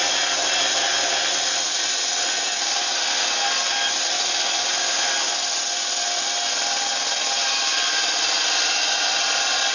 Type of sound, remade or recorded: recorded